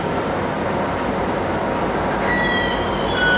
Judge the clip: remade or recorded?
recorded